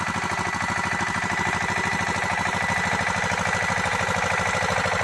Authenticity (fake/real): real